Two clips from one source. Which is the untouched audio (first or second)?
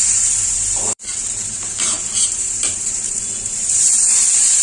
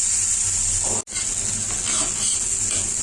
second